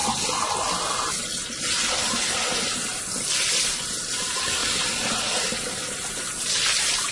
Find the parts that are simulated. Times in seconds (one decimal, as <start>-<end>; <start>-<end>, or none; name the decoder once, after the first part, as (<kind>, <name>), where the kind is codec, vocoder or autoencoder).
1.3-2.5 (vocoder, BigVGAN v2); 2.9-3.7